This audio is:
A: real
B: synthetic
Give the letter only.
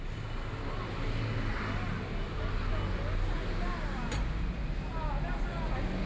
A